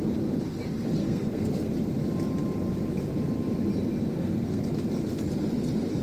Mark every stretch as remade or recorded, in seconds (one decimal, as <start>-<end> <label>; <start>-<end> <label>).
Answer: 0.0-1.0 recorded; 1.0-1.7 remade; 1.7-4.1 recorded; 4.1-4.6 remade; 4.6-6.0 recorded